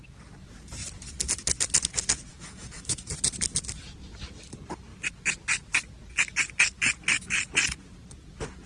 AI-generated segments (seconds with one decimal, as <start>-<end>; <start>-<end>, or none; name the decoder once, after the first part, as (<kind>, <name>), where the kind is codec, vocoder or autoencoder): 2.3-3.1 (autoencoder, DAC-VAE)